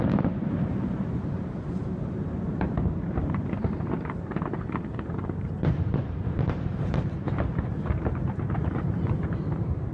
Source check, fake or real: fake